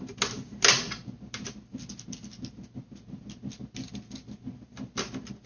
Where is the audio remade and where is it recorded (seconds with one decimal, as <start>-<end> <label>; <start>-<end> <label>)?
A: 0.0-5.5 recorded